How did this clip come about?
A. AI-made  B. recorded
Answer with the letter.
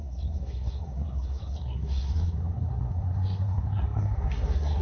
A